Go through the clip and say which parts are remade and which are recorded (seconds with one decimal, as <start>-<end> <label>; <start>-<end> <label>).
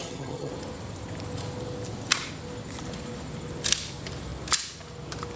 0.0-0.5 remade; 0.5-5.4 recorded